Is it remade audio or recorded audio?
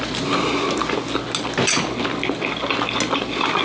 recorded